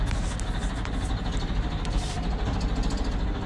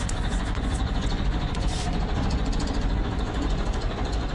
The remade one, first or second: second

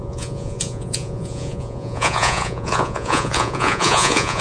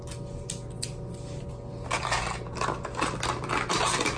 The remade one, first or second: first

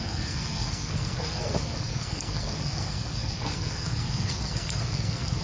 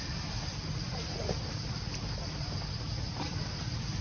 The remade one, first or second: first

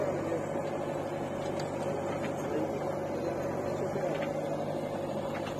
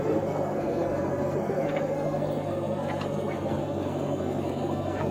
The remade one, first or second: second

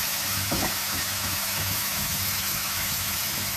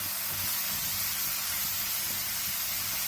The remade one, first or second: first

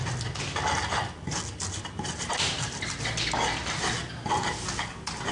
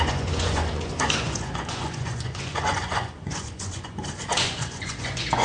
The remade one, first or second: second